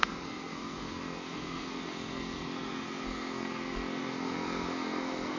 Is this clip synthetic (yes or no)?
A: yes